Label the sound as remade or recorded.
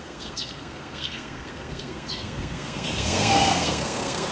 remade